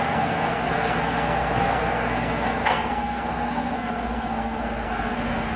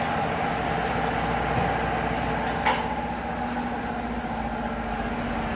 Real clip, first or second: second